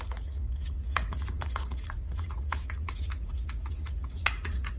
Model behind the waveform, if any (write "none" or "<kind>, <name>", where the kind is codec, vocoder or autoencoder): vocoder, Vocos